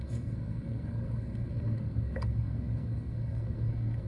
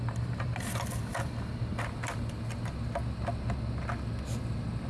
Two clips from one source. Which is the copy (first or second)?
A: first